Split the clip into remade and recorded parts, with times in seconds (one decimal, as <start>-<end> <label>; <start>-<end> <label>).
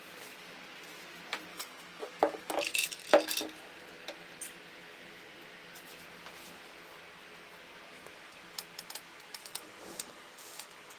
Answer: 0.0-1.5 recorded; 1.5-3.0 remade; 3.0-9.4 recorded; 9.4-11.0 remade